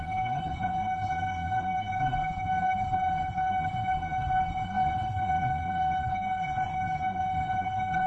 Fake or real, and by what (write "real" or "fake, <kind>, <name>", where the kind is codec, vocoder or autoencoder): fake, codec, SNAC